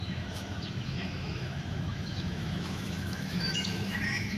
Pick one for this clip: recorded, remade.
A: remade